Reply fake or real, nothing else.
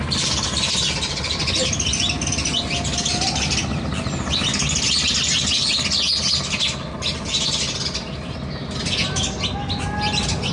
real